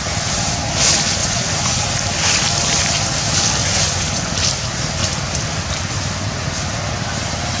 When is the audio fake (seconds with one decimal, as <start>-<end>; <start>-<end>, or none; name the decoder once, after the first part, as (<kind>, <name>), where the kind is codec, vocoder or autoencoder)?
1.2-1.8 (vocoder, Vocos); 3.6-4.3